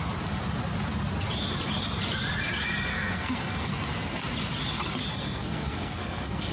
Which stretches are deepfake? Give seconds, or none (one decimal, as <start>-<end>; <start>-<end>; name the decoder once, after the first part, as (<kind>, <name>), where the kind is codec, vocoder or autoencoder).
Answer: 2.9-3.7 (codec, SNAC); 5.1-6.5